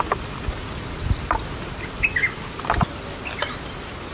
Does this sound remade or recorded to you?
recorded